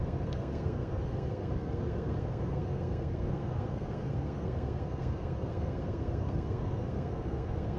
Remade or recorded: remade